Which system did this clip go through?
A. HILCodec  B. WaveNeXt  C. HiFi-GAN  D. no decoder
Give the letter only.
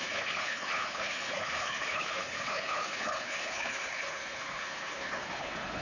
A